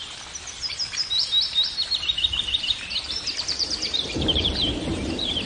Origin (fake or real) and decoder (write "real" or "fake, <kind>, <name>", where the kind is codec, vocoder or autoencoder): fake, vocoder, BigVGAN v2